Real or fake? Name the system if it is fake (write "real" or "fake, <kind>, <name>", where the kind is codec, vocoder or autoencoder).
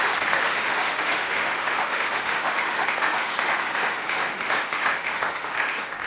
fake, autoencoder, DAC-VAE